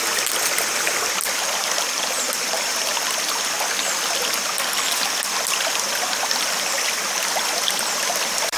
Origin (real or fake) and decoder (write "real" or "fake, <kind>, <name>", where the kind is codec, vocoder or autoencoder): real